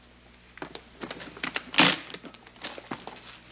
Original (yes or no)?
yes